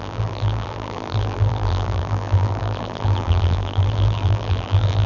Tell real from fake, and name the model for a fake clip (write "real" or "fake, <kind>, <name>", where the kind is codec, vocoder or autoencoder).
fake, vocoder, BigVGAN v2